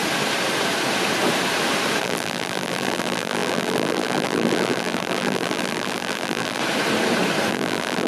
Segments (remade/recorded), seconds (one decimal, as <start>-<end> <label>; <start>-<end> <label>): 0.0-2.0 recorded; 2.0-6.6 remade; 6.6-7.5 recorded; 7.5-8.1 remade